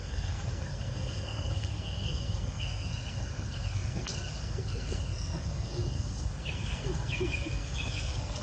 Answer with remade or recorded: remade